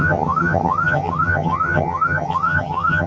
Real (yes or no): no